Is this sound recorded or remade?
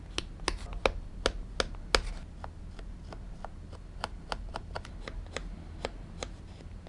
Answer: recorded